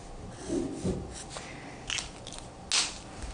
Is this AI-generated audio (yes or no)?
no